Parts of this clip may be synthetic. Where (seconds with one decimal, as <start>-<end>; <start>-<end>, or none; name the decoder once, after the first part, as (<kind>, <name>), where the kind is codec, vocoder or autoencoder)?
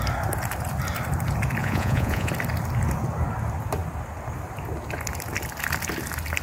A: 1.6-2.3 (vocoder, Vocos)